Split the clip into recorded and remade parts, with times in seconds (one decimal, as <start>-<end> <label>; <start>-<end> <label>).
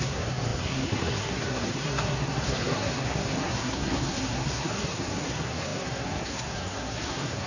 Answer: 0.0-7.5 remade